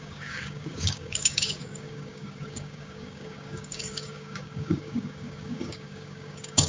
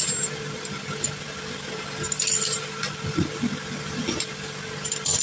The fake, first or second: first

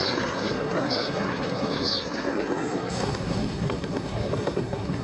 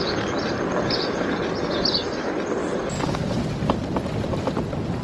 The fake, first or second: first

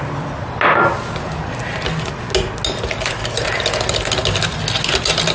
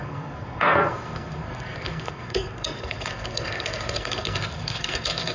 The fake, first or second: second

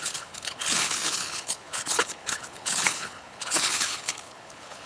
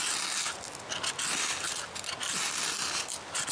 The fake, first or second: first